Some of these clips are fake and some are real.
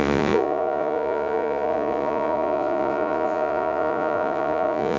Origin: fake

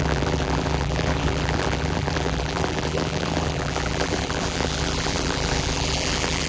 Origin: fake